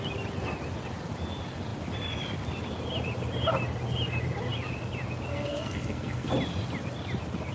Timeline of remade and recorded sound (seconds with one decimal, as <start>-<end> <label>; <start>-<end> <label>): 0.0-5.3 recorded; 5.3-6.3 remade; 6.3-7.5 recorded